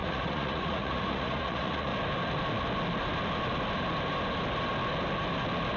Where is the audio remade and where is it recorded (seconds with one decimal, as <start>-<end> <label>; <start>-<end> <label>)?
0.0-1.9 remade; 1.9-5.8 recorded